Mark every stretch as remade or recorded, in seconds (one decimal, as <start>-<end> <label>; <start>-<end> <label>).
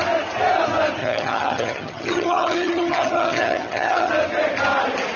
0.0-1.0 recorded; 1.0-4.1 remade; 4.1-5.2 recorded